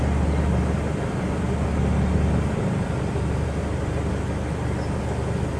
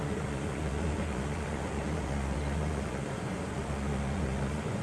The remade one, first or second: second